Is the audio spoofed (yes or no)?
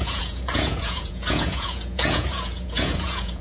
yes